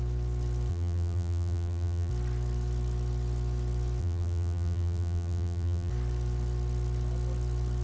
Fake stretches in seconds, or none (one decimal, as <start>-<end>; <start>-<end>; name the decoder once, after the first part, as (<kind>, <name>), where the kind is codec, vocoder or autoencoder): 0.7-2.1 (vocoder, BigVGAN v2); 4.0-5.9